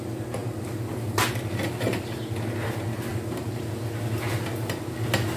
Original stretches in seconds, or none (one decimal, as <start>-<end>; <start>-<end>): 0.0-5.4